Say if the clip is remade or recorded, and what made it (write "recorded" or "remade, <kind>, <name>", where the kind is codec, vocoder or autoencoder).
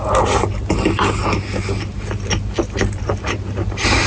recorded